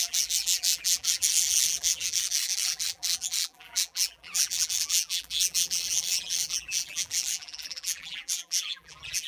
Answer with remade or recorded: remade